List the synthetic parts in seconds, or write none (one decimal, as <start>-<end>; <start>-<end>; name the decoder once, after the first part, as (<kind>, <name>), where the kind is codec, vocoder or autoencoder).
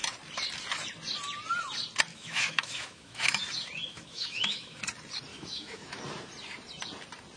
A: 2.1-3.4 (autoencoder, DAC-VAE); 3.9-4.8; 5.3-6.0